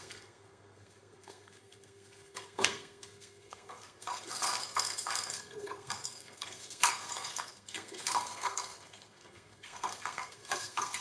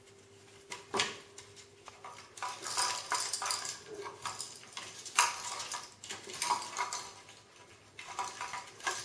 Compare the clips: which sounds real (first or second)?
second